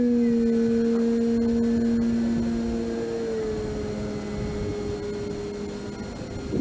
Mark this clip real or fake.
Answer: real